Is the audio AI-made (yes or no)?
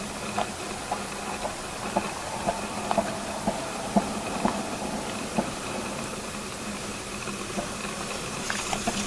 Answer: no